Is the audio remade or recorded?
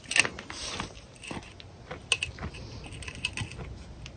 recorded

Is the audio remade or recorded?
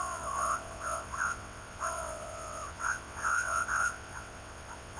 remade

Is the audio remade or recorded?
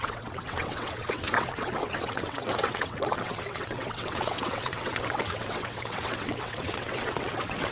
remade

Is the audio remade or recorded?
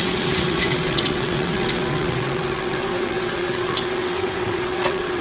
remade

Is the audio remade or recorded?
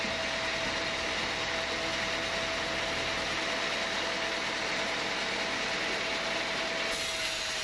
recorded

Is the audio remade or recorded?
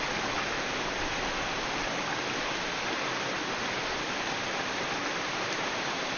recorded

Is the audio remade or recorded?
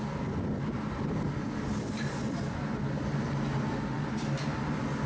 recorded